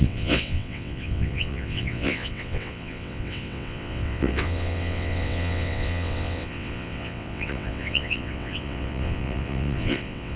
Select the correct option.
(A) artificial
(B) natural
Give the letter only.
A